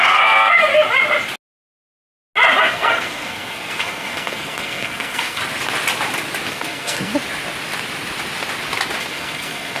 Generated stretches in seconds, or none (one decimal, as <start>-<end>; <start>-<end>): 0.0-0.7; 2.6-5.4; 6.5-7.1; 9.0-9.8